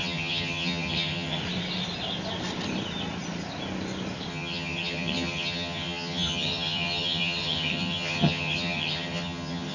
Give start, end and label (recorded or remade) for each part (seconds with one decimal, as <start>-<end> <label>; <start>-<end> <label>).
0.0-1.4 remade; 1.4-4.3 recorded; 4.3-9.7 remade